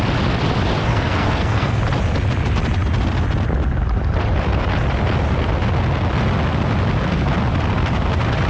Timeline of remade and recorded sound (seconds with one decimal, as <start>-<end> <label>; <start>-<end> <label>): 0.0-0.8 recorded; 0.8-1.8 remade; 1.8-8.5 recorded